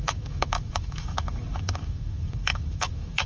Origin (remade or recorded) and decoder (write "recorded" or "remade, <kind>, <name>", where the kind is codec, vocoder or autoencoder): remade, autoencoder, DAC-VAE